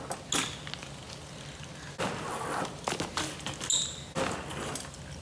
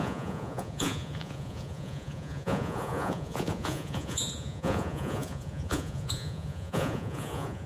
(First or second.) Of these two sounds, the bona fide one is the first